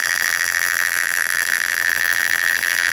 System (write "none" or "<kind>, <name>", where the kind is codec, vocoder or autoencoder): vocoder, BigVGAN v2